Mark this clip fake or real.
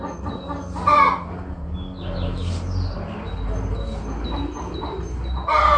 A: real